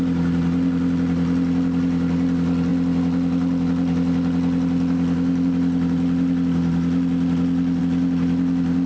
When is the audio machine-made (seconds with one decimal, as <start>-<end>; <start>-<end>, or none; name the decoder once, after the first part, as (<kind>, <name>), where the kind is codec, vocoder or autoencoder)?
none